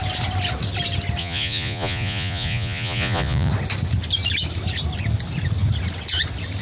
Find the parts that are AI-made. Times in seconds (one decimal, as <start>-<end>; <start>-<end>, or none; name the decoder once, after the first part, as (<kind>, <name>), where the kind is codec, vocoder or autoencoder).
1.2-3.5 (vocoder, Vocos)